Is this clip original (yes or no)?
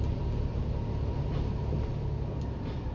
yes